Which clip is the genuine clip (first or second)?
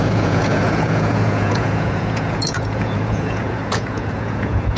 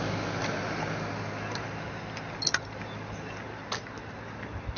second